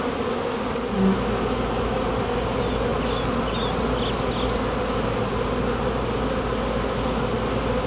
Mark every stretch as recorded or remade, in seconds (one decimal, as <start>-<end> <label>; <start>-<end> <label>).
0.0-7.9 recorded